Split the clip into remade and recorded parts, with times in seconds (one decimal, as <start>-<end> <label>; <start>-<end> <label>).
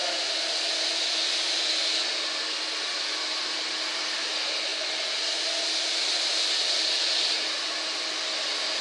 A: 0.0-8.8 recorded